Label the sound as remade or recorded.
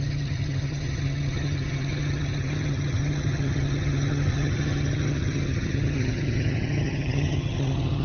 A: remade